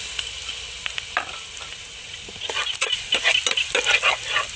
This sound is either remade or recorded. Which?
recorded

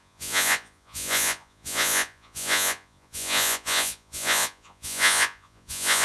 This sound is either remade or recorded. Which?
remade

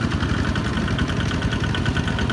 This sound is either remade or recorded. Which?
recorded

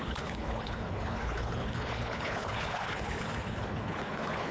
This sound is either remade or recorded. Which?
remade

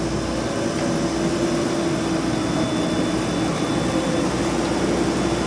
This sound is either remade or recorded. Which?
recorded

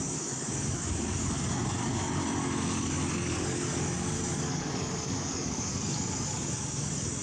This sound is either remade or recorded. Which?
remade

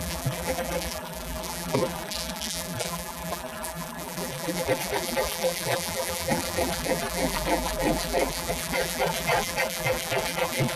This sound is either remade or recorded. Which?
remade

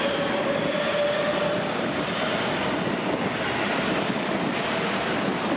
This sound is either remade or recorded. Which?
recorded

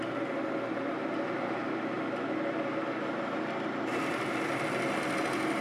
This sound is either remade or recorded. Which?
recorded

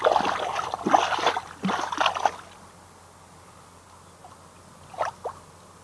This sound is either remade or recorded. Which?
recorded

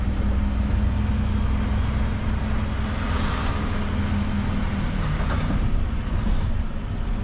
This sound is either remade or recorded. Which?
recorded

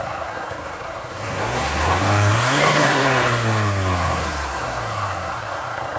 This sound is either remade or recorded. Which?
remade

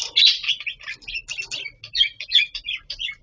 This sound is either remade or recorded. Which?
recorded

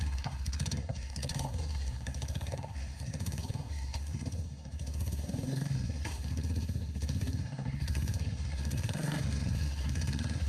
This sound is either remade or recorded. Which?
remade